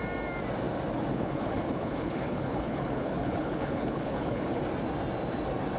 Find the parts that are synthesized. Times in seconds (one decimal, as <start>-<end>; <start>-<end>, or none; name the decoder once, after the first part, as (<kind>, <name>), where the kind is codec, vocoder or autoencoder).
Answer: 1.1-4.6 (codec, HILCodec)